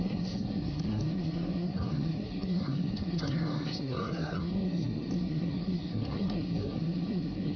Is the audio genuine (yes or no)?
no